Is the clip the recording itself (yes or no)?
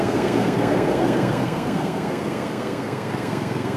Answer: no